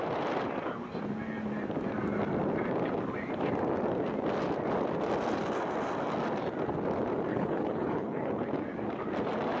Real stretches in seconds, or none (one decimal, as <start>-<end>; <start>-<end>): 0.0-7.3; 8.3-9.6